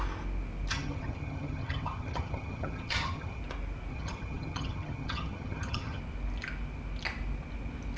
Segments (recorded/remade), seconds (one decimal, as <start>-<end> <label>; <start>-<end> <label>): 0.0-0.7 recorded; 0.7-3.4 remade; 3.4-3.9 recorded; 3.9-6.0 remade; 6.0-8.0 recorded